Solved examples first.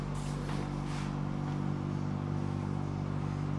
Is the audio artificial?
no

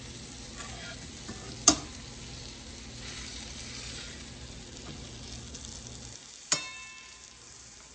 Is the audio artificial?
no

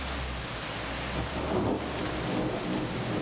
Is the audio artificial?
no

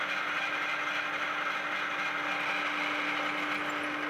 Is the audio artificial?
no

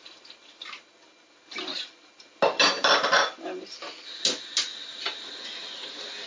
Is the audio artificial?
no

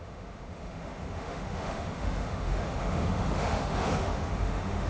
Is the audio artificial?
yes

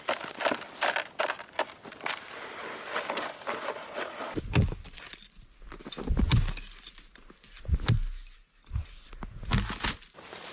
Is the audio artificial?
no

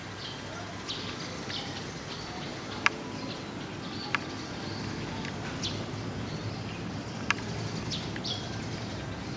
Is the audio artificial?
no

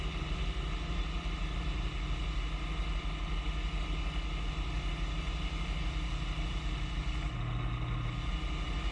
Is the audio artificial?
no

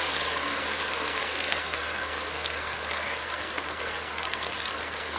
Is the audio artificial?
yes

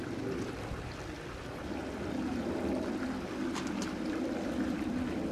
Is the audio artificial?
no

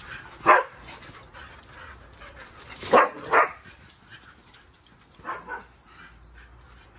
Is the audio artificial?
no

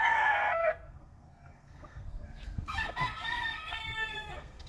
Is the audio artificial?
yes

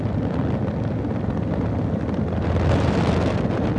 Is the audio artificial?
no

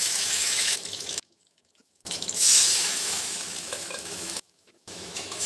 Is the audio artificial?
yes